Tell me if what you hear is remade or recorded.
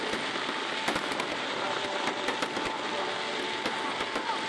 recorded